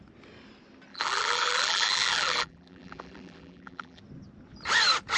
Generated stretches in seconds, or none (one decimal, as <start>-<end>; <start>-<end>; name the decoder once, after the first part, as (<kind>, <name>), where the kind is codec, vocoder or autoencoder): 0.9-4.0 (vocoder, BigVGAN v2)